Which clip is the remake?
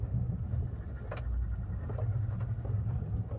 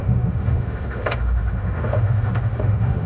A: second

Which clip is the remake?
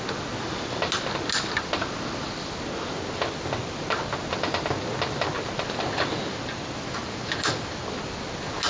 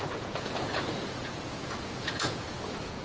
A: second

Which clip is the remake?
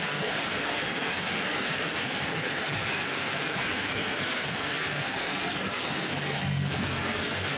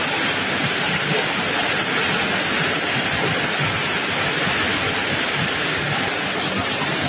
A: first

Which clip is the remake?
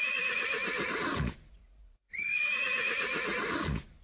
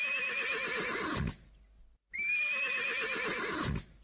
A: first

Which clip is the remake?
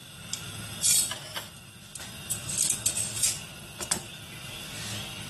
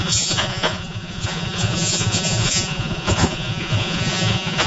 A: second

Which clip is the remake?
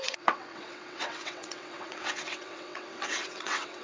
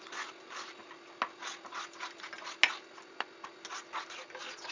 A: first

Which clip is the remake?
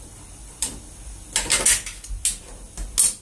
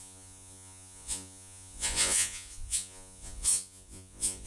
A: second